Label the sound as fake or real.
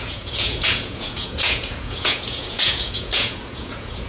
fake